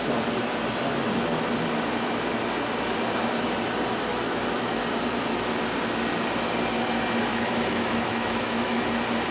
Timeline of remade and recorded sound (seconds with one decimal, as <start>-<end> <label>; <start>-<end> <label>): 0.0-4.1 recorded; 4.1-4.8 remade; 4.8-7.3 recorded; 7.3-8.8 remade; 8.8-9.3 recorded